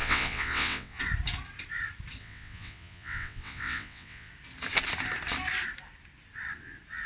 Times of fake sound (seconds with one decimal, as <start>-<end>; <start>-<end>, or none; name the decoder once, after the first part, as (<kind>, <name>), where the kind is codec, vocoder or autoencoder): 0.0-1.0 (vocoder, WaveNeXt); 2.2-4.3